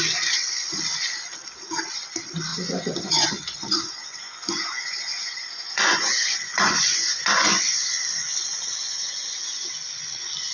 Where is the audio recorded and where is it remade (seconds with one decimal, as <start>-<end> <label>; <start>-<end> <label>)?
0.0-2.5 recorded; 2.5-7.6 remade; 7.6-8.8 recorded; 8.8-9.6 remade; 9.6-10.5 recorded